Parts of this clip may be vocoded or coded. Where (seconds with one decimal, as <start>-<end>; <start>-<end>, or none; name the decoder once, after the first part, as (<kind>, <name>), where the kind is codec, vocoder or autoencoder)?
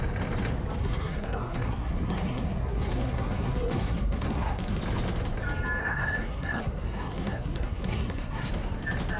0.8-4.8 (codec, SNAC); 5.8-8.5